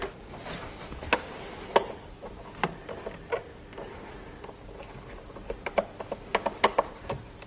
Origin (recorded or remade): recorded